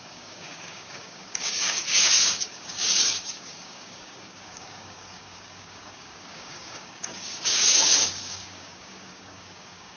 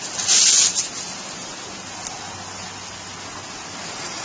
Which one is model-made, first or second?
first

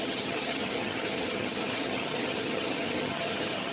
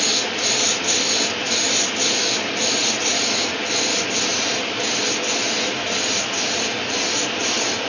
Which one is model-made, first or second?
first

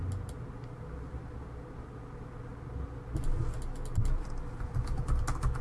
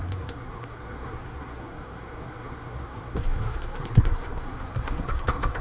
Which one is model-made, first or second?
second